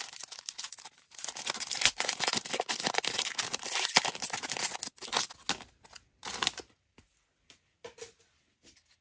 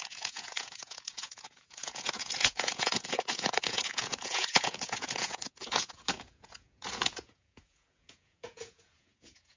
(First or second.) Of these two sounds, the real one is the first